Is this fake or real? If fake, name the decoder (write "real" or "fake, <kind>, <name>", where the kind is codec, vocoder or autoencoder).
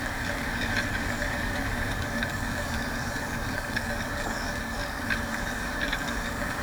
fake, codec, DAC